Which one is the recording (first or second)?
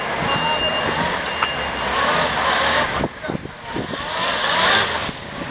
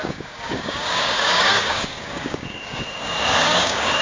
first